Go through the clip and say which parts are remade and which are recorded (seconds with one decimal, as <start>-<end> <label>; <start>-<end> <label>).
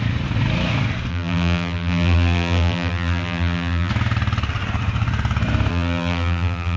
0.0-1.1 recorded; 1.1-3.9 remade; 3.9-5.7 recorded; 5.7-6.8 remade